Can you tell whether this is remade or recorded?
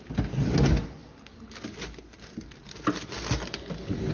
recorded